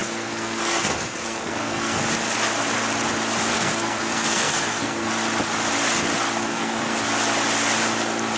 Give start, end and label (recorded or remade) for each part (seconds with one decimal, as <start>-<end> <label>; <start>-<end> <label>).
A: 0.0-2.0 remade; 2.0-3.5 recorded; 3.5-5.1 remade; 5.1-6.4 recorded; 6.4-7.0 remade; 7.0-8.4 recorded